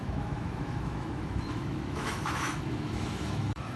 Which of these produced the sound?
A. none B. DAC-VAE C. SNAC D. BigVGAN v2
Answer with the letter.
B